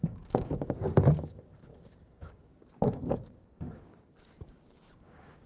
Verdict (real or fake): fake